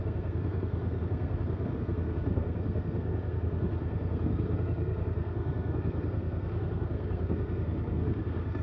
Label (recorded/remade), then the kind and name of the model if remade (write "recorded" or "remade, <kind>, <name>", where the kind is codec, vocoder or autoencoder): remade, codec, SNAC